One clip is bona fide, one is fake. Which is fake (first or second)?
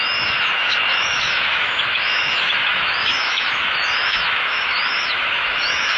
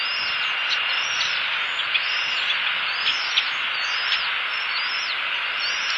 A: first